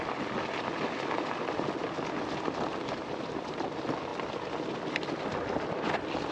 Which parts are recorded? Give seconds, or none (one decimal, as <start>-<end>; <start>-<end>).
0.0-6.3